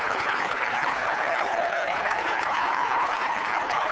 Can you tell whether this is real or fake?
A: fake